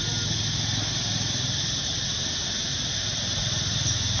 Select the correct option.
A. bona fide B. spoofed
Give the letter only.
A